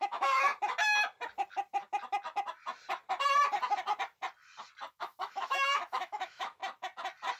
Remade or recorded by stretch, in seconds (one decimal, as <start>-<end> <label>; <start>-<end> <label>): 0.0-0.5 remade; 0.5-4.9 recorded; 4.9-6.6 remade; 6.6-7.4 recorded